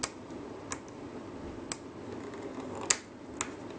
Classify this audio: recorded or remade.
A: recorded